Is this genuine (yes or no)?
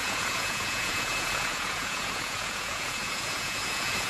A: no